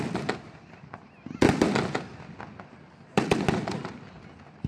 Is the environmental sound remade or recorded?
recorded